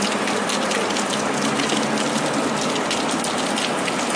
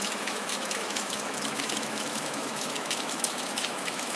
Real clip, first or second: first